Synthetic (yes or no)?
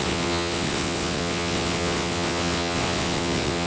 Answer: yes